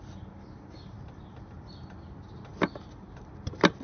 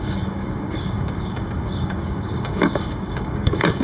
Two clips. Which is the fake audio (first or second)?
second